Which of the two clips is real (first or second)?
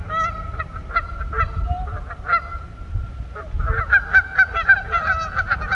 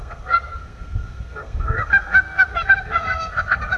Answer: first